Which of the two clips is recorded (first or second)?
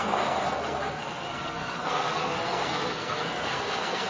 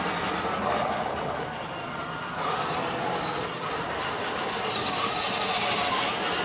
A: second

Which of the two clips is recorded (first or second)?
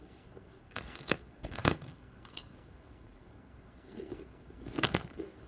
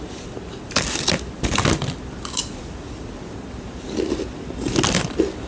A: second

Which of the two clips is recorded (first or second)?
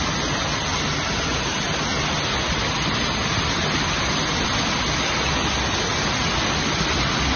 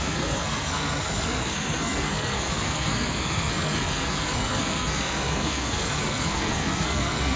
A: first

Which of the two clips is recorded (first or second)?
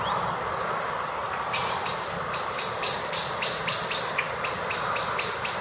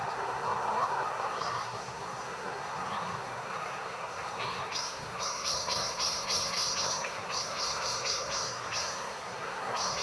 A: first